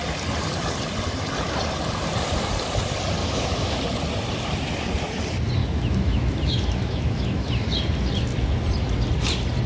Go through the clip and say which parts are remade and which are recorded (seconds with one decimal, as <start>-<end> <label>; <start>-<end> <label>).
0.0-3.2 recorded; 3.2-3.8 remade; 3.8-5.6 recorded; 5.6-7.5 remade; 7.5-9.7 recorded